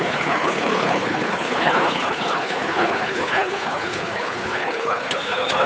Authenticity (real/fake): fake